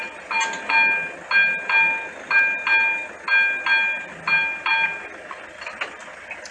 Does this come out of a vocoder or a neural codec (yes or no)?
no